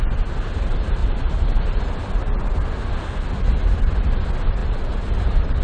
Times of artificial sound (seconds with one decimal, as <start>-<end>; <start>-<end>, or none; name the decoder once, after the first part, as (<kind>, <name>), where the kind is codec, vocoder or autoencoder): 1.0-1.8 (vocoder, BigVGAN v2); 4.6-5.6